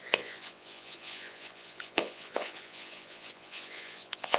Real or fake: fake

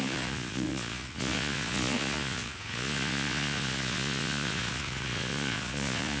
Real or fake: fake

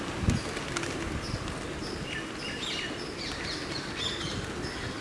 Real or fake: real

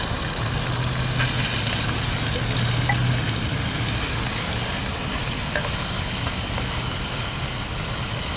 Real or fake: real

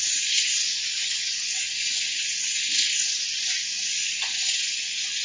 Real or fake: fake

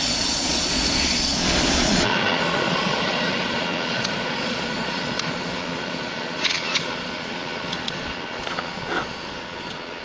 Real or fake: fake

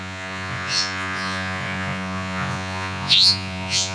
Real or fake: fake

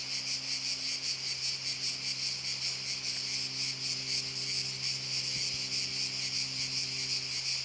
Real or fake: real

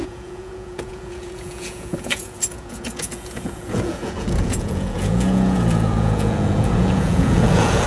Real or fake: fake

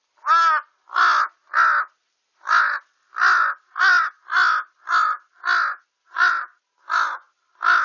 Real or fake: real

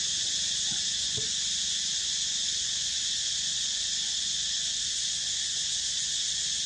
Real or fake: fake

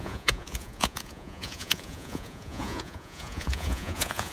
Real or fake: fake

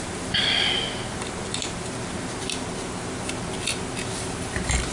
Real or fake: real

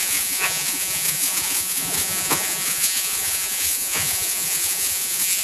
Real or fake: fake